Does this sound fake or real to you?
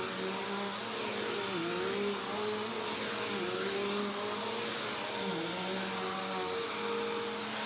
real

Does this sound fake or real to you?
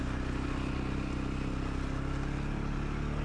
real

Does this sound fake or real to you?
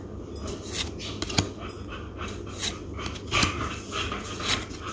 real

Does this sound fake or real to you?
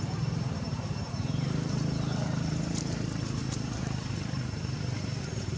fake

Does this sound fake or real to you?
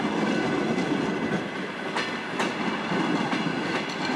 real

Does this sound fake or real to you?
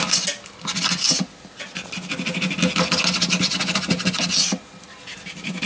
real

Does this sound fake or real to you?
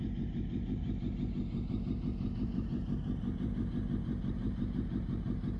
fake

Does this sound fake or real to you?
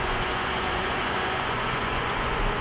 fake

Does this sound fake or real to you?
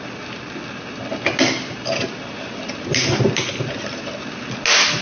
real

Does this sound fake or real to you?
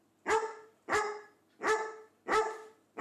real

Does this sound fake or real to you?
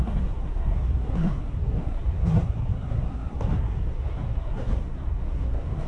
fake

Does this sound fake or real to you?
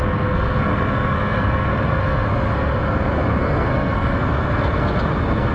fake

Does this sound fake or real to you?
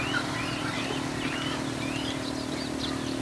real